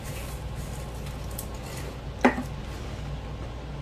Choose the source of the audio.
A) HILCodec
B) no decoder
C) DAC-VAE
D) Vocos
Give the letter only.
B